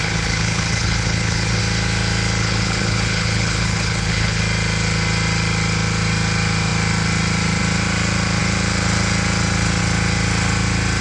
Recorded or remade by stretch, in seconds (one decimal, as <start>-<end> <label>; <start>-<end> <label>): 0.0-1.6 remade; 1.6-2.4 recorded; 2.4-4.4 remade; 4.4-11.0 recorded